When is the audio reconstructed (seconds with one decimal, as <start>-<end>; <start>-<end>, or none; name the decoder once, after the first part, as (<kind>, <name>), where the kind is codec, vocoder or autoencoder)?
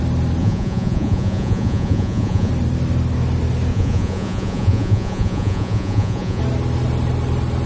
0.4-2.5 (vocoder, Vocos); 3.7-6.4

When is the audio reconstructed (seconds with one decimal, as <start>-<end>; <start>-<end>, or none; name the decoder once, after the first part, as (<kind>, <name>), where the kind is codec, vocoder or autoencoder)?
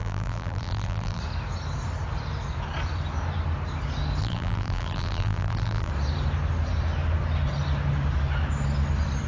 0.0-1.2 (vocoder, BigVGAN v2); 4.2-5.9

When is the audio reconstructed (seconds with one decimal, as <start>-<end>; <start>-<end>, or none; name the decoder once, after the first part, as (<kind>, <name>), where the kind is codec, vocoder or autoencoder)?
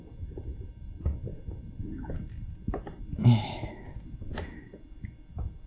3.2-3.7 (autoencoder, DAC-VAE)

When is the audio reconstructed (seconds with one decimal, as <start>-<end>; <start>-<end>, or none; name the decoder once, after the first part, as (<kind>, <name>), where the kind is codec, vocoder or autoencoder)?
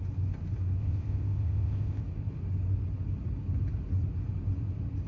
0.8-2.0 (codec, ZipCodec)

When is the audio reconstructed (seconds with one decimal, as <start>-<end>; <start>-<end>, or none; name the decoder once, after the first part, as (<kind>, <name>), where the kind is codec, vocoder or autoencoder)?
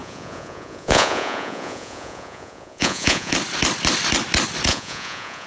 0.0-3.3 (vocoder, Vocos); 4.7-5.5